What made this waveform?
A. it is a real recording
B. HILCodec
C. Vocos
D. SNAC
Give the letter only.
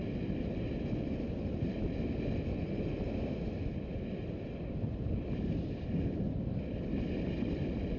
A